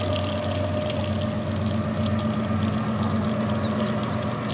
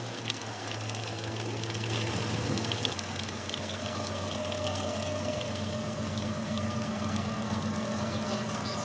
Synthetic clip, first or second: second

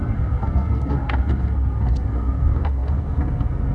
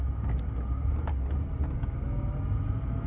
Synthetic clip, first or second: first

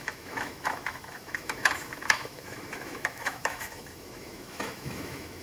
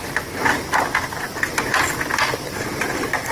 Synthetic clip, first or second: first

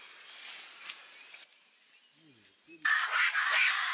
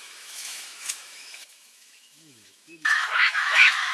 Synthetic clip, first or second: second